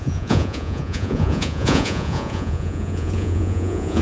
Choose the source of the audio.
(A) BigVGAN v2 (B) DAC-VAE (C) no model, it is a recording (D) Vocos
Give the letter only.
D